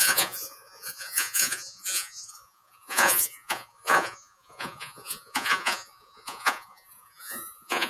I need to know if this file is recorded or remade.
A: remade